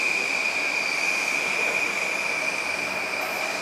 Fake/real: real